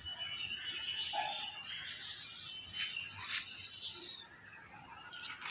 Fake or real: real